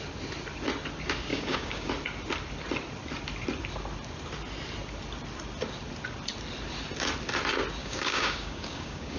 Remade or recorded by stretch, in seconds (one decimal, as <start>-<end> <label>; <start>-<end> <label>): 0.0-1.3 recorded; 1.3-1.9 remade; 1.9-7.8 recorded; 7.8-9.2 remade